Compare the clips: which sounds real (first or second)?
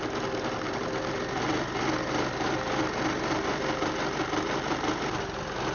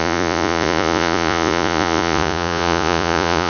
first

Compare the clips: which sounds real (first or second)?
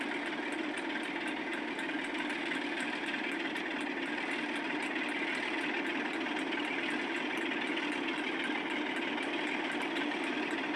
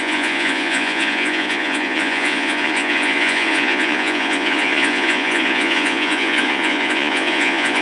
first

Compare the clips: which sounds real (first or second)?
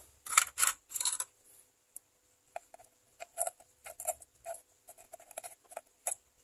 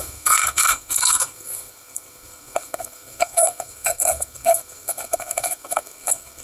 first